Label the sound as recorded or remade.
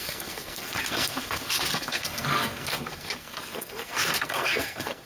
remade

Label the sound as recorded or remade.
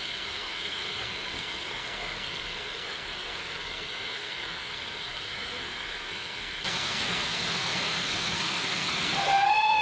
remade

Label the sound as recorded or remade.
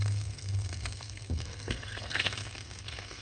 remade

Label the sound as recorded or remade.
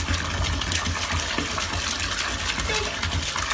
recorded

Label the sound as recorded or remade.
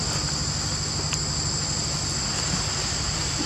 recorded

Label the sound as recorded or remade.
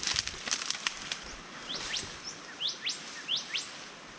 recorded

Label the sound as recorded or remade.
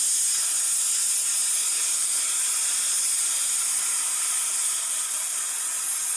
recorded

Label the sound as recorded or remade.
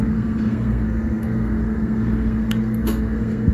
remade